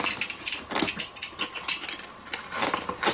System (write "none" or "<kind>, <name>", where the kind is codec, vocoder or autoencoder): none